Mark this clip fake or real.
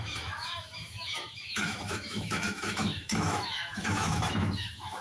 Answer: fake